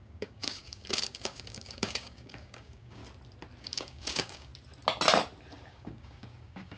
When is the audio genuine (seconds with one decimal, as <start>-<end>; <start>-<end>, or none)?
3.0-3.6; 4.5-5.7